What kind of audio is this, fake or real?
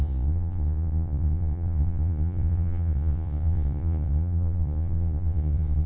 fake